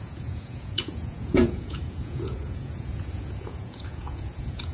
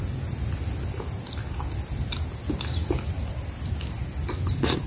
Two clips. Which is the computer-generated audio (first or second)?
first